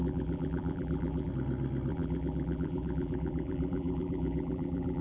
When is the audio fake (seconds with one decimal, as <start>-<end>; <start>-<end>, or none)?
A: 0.0-1.3; 1.9-5.0